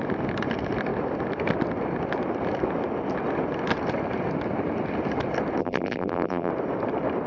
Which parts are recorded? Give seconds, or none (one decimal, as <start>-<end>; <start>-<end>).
0.0-5.6; 6.5-7.3